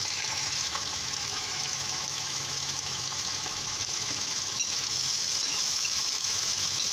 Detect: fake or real fake